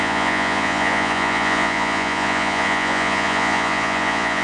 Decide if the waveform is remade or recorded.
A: remade